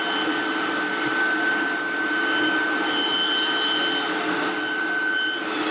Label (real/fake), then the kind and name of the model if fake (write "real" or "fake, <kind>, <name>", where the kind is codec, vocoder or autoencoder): real